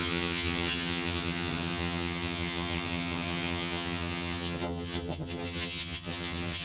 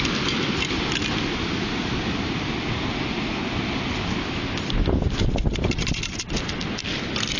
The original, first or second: second